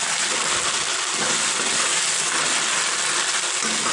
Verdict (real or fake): real